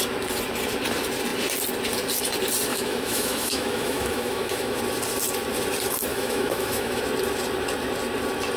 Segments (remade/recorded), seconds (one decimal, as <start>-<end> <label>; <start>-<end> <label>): 0.0-2.7 recorded; 2.7-4.8 remade; 4.8-6.1 recorded; 6.1-7.0 remade; 7.0-8.6 recorded